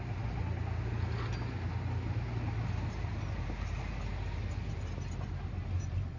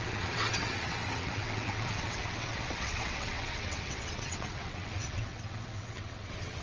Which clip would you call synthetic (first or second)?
second